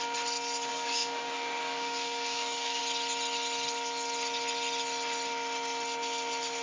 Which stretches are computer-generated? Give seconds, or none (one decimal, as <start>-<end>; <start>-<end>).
0.7-2.8